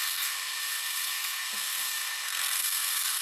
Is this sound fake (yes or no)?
yes